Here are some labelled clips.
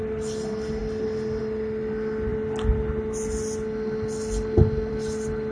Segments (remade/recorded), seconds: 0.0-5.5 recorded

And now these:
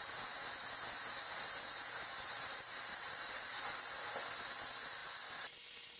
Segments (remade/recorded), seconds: 0.0-2.0 recorded; 2.0-3.5 remade; 3.5-6.0 recorded

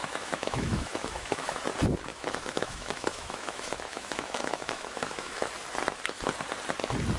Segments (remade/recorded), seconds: 0.0-1.6 remade; 1.6-2.1 recorded; 2.1-5.5 remade; 5.5-7.2 recorded

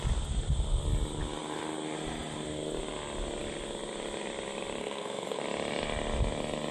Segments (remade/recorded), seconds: 0.0-4.8 recorded; 4.8-5.4 remade; 5.4-6.7 recorded

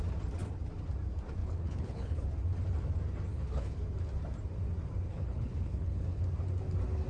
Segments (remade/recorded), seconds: 0.0-1.4 recorded; 1.4-2.2 remade; 2.2-3.3 recorded; 3.3-3.8 remade; 3.8-5.1 recorded; 5.1-6.2 remade; 6.2-7.1 recorded

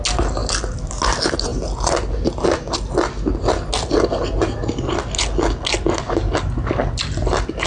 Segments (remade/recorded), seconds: 0.0-7.7 recorded

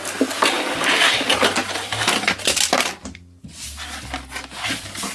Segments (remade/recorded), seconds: 0.0-5.1 recorded